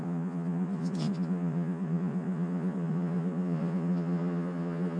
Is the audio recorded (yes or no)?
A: no